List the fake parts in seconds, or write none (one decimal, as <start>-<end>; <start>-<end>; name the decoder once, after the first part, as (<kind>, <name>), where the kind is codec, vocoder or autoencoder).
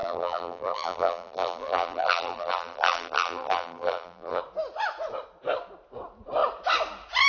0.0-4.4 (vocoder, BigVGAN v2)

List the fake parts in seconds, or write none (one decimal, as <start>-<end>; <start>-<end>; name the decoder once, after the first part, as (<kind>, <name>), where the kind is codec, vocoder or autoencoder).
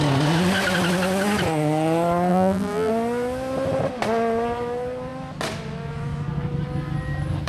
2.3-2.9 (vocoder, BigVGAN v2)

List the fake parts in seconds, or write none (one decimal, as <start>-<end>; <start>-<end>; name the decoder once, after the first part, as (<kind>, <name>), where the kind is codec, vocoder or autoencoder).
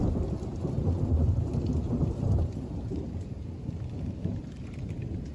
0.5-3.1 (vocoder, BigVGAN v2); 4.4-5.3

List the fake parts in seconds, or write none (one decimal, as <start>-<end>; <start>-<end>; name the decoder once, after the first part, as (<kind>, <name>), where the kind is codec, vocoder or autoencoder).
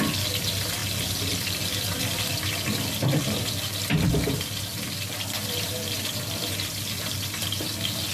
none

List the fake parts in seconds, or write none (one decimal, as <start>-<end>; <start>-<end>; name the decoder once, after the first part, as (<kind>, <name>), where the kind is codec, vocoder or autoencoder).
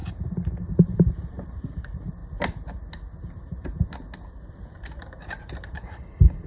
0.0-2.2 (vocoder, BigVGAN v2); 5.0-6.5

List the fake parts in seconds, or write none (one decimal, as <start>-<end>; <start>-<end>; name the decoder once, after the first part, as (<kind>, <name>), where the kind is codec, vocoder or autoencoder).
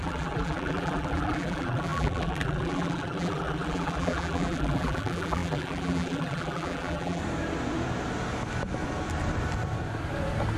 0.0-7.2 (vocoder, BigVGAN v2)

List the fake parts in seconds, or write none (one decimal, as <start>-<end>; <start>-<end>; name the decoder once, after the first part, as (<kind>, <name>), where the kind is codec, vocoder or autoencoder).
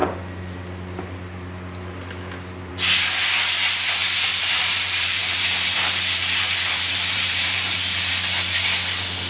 4.0-8.1 (vocoder, BigVGAN v2)